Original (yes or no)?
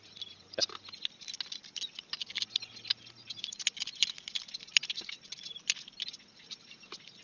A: yes